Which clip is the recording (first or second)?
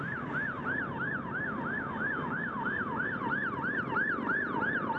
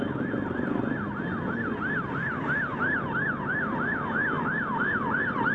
second